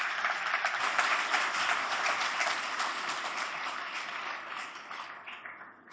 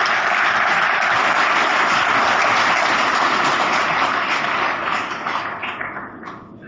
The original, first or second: second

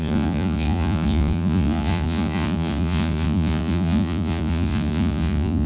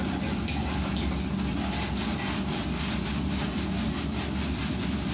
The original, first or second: second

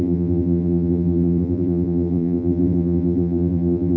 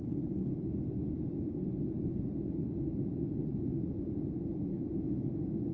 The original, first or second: second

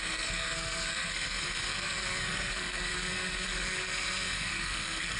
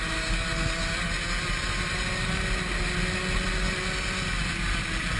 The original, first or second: second